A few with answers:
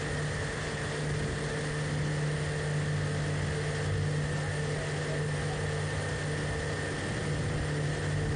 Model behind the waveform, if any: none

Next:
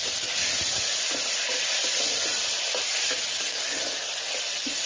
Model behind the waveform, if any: none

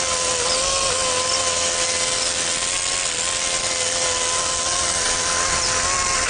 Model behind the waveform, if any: none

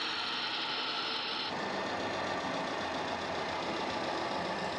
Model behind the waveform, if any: none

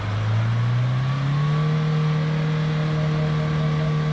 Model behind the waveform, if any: none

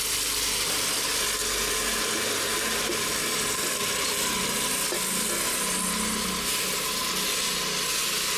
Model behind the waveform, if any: none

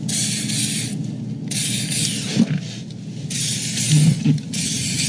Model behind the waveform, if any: none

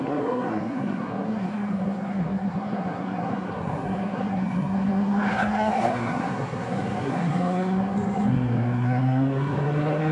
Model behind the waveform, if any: codec, SNAC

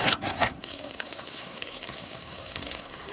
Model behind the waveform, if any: codec, SNAC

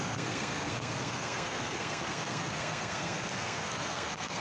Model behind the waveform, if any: codec, SNAC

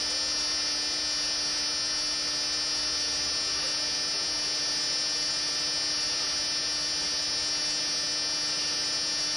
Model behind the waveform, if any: none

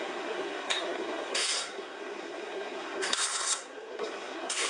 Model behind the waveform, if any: codec, SNAC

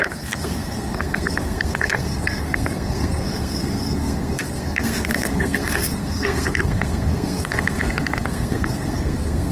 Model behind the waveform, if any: codec, SNAC